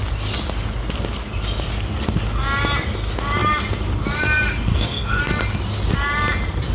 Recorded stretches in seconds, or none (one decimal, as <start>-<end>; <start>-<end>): 0.0-4.7; 5.2-6.7